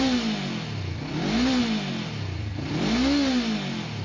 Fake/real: real